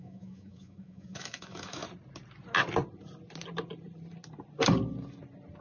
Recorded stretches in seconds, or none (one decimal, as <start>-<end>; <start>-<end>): 1.8-5.6